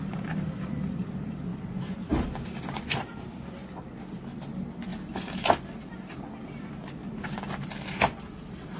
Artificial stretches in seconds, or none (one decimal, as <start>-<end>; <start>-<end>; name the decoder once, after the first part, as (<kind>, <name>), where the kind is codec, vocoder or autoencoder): 0.0-4.9 (vocoder, BigVGAN v2); 6.3-8.8